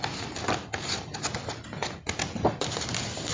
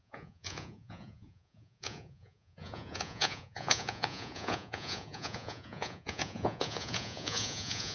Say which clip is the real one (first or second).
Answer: first